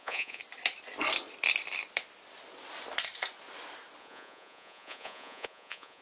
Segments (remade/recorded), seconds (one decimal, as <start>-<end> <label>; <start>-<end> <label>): 0.0-0.4 remade; 0.4-4.0 recorded; 4.0-6.0 remade